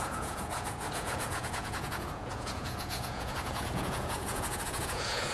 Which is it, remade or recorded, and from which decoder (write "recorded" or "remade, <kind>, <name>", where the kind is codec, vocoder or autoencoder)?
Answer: remade, vocoder, Vocos